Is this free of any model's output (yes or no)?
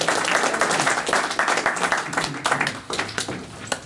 yes